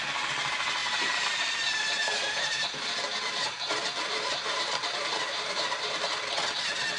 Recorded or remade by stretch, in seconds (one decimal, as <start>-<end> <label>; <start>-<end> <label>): 0.0-0.8 recorded; 0.8-1.5 remade; 1.5-2.0 recorded; 2.0-6.2 remade; 6.2-7.0 recorded